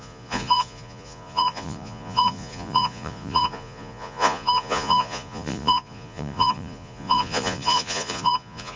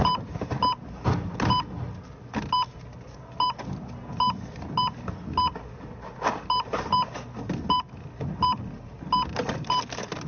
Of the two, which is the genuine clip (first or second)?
second